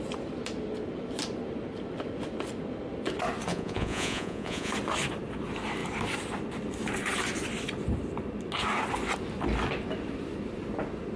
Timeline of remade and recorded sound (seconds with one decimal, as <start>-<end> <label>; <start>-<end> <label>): 0.0-3.5 recorded; 3.5-4.7 remade; 4.7-11.2 recorded